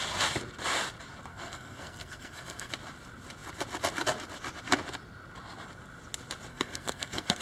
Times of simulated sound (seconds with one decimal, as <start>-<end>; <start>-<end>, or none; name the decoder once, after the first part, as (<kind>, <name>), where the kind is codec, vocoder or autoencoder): 1.3-2.7 (codec, SNAC); 6.5-7.4